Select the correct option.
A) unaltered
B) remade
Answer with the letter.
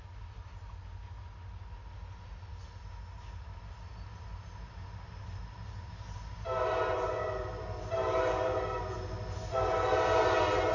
A